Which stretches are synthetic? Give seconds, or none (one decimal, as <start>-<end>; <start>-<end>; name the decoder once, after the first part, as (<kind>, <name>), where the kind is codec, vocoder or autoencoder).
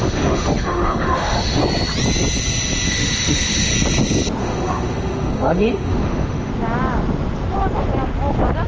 0.0-1.6 (autoencoder, DAC-VAE); 2.9-3.7; 4.4-6.5